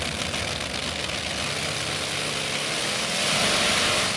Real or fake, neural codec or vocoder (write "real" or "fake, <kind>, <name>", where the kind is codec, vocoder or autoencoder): real